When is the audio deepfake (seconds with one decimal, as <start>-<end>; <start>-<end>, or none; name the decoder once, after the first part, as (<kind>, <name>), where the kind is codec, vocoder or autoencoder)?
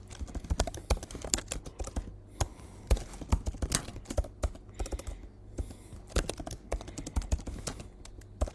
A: 2.5-3.3 (vocoder, BigVGAN v2)